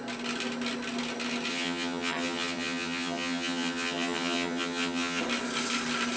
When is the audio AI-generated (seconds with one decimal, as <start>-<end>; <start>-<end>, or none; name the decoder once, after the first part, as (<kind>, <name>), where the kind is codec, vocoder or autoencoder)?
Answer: 1.5-5.2 (vocoder, HiFi-GAN)